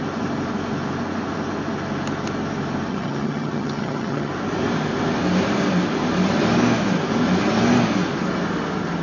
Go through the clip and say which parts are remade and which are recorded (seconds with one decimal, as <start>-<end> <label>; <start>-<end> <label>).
0.0-2.9 recorded; 2.9-4.3 remade; 4.3-9.0 recorded